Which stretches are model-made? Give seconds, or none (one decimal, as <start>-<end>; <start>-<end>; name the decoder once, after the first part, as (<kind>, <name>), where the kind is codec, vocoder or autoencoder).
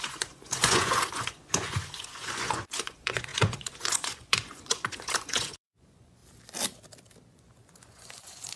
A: 0.0-6.2 (vocoder, Vocos); 7.3-8.6